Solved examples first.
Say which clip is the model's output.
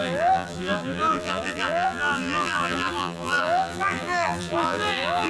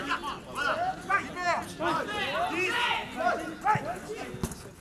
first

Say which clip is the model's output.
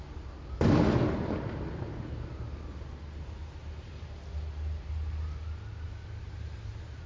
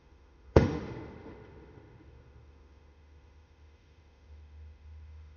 second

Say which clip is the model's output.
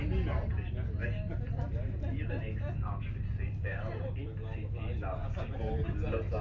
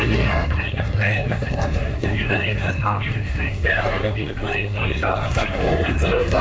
second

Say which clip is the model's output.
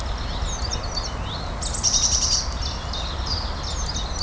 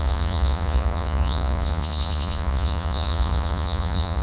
second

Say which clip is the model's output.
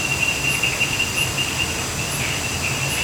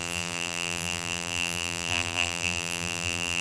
second